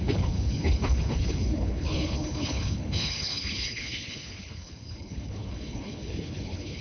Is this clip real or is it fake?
fake